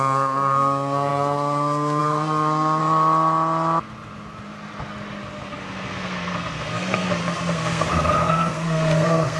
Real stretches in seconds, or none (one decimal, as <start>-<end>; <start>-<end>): 2.8-5.5